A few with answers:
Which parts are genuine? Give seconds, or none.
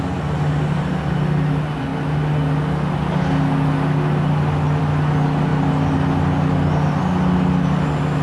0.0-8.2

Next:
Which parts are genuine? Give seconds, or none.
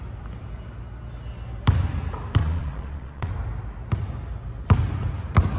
0.0-2.4; 3.3-5.6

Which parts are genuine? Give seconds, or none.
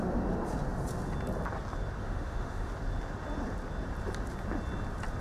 0.0-2.0; 2.7-5.2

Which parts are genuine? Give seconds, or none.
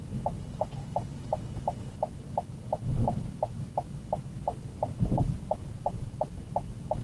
0.0-7.0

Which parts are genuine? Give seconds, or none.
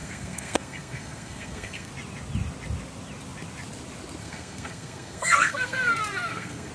1.9-4.2